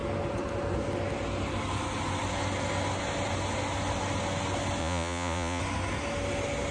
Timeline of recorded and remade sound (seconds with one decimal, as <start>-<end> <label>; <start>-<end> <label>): 0.0-4.8 recorded; 4.8-5.6 remade; 5.6-6.7 recorded